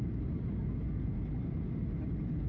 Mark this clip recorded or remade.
recorded